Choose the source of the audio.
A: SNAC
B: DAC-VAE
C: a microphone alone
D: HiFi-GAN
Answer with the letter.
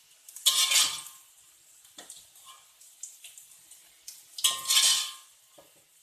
C